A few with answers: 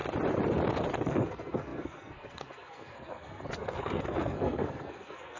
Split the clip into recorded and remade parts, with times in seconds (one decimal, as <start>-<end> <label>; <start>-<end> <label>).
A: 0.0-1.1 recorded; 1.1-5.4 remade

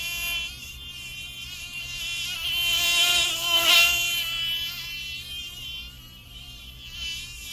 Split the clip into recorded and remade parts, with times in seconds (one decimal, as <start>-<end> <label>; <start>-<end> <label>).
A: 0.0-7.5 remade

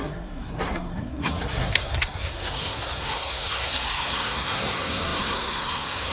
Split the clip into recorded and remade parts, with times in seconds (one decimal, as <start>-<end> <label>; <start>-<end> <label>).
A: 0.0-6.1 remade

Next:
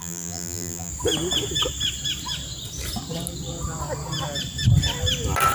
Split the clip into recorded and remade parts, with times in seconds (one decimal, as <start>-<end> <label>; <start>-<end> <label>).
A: 0.0-0.9 remade; 0.9-5.5 recorded